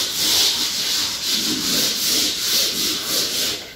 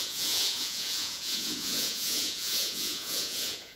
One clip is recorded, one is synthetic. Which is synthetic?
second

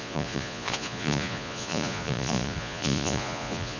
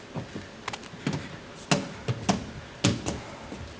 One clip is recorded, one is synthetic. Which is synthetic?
first